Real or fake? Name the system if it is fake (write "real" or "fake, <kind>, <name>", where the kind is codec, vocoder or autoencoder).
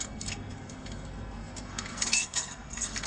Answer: fake, codec, SNAC